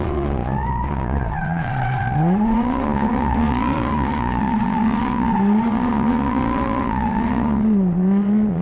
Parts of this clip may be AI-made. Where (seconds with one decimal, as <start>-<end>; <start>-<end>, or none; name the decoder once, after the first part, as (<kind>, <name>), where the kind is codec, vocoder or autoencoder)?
0.0-8.6 (vocoder, Vocos)